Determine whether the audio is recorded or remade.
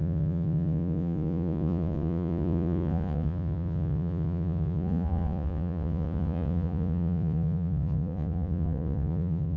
remade